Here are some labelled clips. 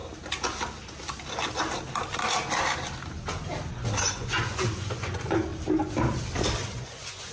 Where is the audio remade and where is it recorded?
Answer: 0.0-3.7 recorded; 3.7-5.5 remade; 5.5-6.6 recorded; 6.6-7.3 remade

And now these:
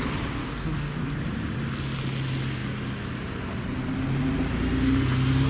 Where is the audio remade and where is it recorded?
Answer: 0.0-0.4 recorded; 0.4-1.1 remade; 1.1-5.5 recorded